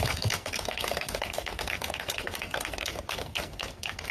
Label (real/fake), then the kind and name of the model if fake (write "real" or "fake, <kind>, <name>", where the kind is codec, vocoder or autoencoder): fake, codec, SNAC